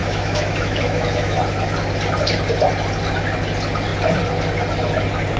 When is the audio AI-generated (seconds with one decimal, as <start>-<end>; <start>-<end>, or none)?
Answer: 0.0-1.4